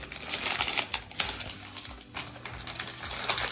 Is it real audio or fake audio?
real